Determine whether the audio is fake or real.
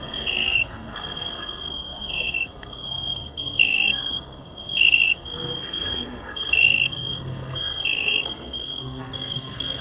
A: fake